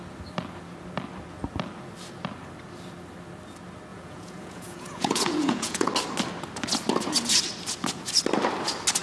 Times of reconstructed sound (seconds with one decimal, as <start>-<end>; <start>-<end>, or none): 3.9-5.9